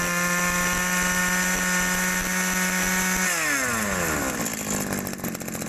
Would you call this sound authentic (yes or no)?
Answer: yes